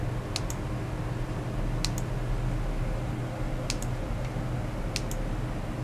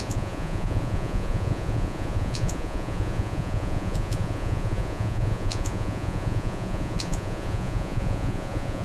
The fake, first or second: second